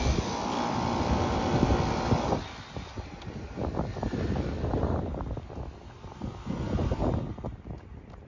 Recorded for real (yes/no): yes